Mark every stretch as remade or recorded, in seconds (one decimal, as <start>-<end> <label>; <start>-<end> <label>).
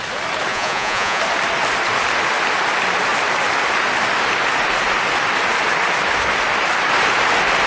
0.0-0.5 recorded; 0.5-1.2 remade; 1.2-7.7 recorded